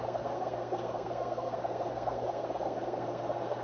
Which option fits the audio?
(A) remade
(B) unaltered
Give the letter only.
A